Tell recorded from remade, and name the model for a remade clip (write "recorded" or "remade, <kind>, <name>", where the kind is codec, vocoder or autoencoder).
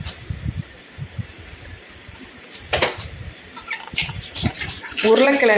remade, vocoder, BigVGAN v2